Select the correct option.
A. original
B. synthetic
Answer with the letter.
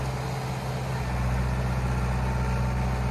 A